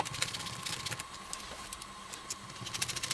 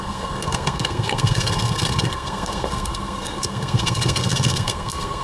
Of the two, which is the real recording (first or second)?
first